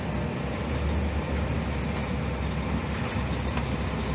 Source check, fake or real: real